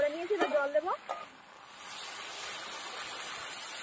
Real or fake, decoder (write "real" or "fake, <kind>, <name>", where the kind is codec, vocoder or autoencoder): real